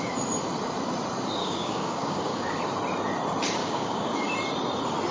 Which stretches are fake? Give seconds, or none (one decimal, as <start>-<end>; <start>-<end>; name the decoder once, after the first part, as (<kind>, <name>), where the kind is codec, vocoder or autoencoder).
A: 1.4-2.6 (codec, DAC); 3.6-4.3